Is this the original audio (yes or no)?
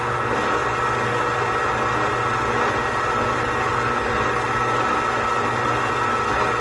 yes